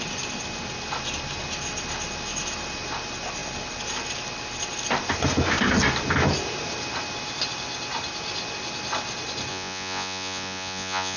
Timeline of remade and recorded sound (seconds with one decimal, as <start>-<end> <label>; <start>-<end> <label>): 0.0-9.5 recorded; 9.5-11.2 remade